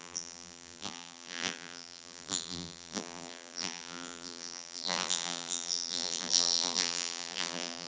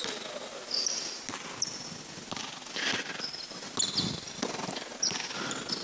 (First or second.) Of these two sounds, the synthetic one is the first